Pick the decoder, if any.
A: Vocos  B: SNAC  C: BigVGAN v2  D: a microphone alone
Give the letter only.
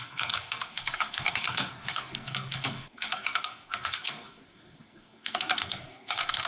B